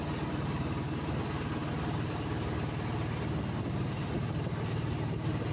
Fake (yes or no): no